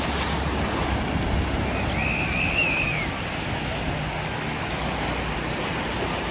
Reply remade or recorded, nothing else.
recorded